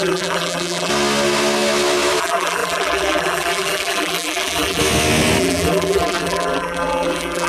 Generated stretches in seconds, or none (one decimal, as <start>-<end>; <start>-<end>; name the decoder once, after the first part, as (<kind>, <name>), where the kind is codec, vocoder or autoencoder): 0.0-0.9 (vocoder, BigVGAN v2); 2.2-4.8; 5.4-7.5